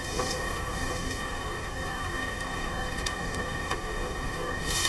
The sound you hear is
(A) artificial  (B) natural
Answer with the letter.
A